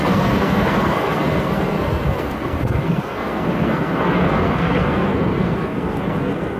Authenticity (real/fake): fake